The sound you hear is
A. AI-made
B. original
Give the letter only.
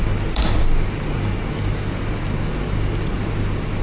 B